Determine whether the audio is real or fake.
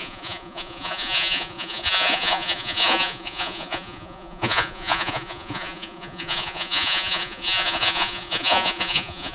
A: fake